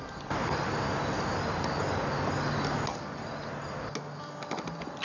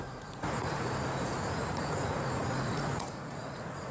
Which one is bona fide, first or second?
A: first